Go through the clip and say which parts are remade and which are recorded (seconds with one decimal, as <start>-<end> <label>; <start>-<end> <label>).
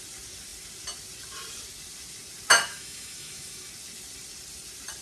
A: 0.0-2.5 recorded; 2.5-3.7 remade; 3.7-5.0 recorded